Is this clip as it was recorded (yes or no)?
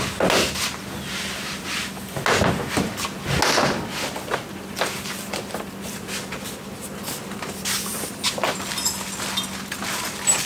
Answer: yes